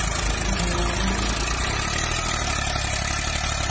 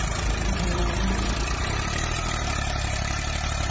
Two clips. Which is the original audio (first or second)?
first